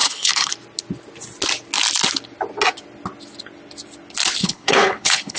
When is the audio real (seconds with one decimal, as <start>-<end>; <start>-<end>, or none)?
0.5-4.4